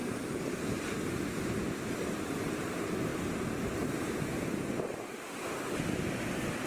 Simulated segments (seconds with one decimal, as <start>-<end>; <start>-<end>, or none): 0.0-5.1; 5.7-6.7